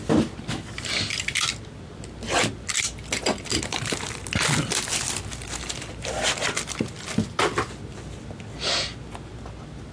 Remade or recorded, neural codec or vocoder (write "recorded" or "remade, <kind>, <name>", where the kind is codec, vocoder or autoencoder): recorded